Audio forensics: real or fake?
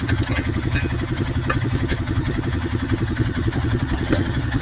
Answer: fake